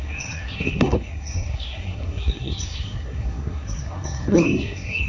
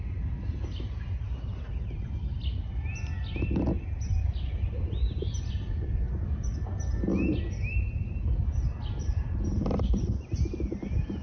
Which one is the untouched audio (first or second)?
second